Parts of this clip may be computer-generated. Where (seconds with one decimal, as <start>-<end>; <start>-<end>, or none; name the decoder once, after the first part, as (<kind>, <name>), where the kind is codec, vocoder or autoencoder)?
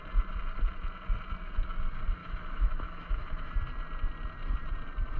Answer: 2.2-3.5 (autoencoder, DAC-VAE)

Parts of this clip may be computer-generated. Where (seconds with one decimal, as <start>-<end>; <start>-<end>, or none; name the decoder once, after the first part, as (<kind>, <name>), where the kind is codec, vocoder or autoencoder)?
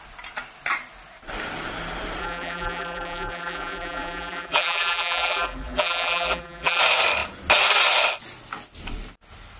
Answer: 2.2-6.8 (vocoder, BigVGAN v2)